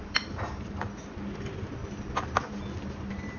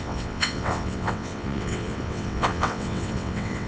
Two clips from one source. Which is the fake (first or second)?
second